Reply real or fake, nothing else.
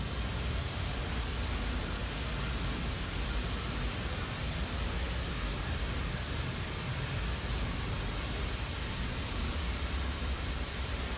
real